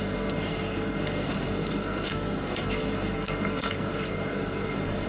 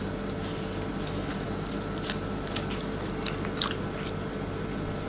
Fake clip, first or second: first